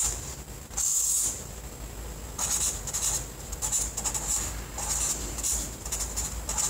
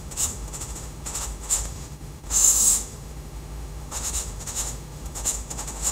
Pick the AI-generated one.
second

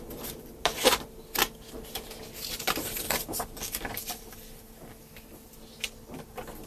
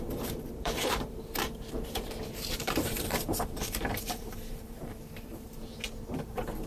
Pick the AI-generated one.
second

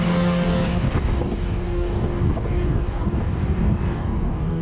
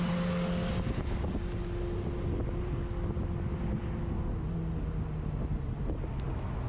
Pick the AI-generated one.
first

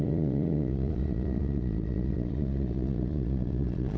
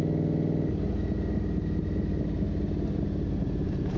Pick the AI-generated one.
first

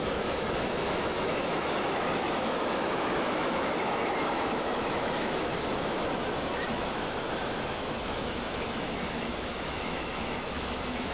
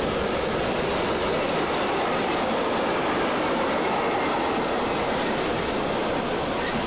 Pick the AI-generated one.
first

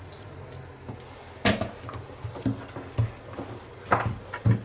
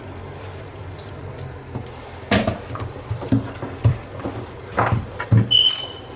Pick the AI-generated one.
second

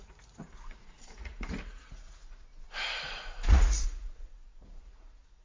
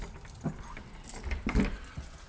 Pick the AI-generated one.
first